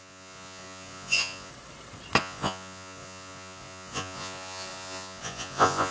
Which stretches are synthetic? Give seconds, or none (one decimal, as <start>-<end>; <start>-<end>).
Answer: 0.0-1.5; 2.2-5.9